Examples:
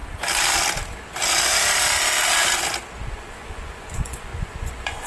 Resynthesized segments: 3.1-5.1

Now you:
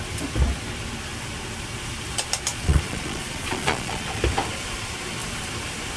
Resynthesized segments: 2.5-4.2

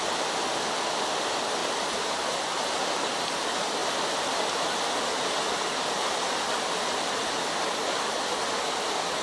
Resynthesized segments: none

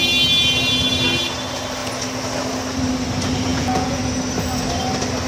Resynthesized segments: 3.5-4.0

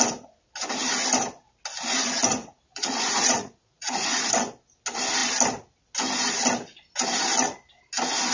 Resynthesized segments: 2.4-4.3

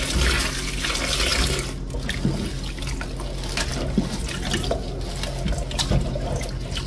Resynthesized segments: none